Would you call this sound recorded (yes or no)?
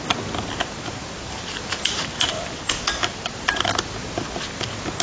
yes